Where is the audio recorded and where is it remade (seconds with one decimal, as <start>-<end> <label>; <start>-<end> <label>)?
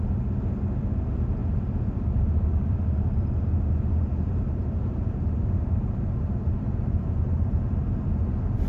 0.0-5.6 recorded; 5.6-7.6 remade; 7.6-8.7 recorded